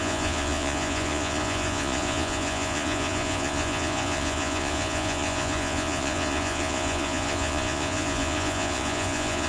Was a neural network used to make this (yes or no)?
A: yes